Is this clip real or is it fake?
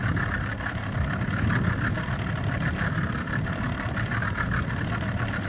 real